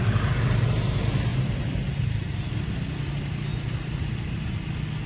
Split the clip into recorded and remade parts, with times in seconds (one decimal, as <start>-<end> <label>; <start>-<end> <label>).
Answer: 0.0-1.3 recorded; 1.3-2.5 remade; 2.5-3.5 recorded; 3.5-4.5 remade; 4.5-5.1 recorded